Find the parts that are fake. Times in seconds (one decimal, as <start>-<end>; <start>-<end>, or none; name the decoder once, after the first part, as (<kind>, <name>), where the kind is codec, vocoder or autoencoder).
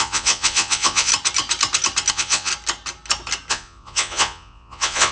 0.0-1.1 (vocoder, Vocos); 2.1-2.5; 3.5-5.1